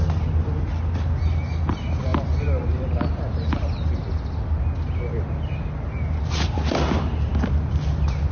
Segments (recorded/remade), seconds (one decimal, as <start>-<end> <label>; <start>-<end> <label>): 0.0-8.3 recorded